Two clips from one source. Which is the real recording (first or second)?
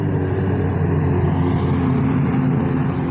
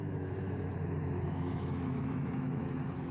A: first